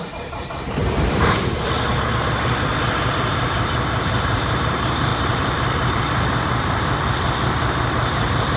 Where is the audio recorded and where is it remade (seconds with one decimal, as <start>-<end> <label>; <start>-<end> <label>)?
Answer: 0.0-2.7 remade; 2.7-3.3 recorded; 3.3-8.6 remade